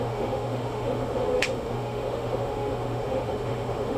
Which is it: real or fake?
fake